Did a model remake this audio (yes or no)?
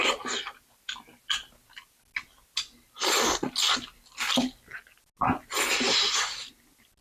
no